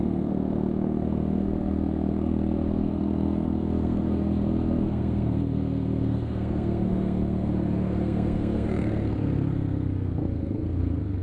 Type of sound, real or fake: fake